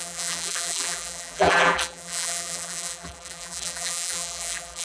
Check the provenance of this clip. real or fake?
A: fake